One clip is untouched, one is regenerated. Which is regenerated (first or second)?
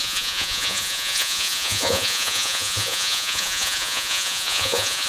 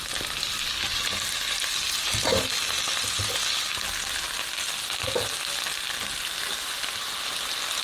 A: first